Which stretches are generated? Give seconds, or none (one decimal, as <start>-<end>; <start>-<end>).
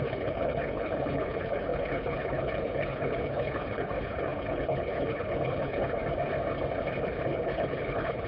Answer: 0.0-6.0; 7.0-8.3